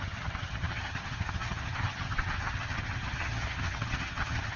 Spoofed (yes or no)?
yes